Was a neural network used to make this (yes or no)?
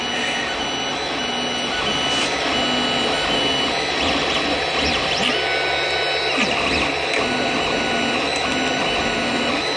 no